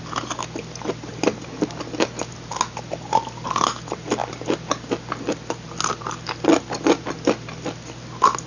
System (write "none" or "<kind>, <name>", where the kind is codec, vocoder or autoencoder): none